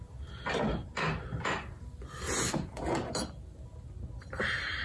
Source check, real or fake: real